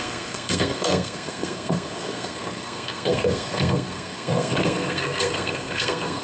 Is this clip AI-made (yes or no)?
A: yes